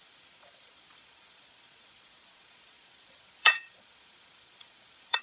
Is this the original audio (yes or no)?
no